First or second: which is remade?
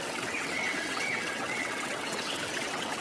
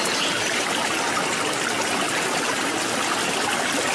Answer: first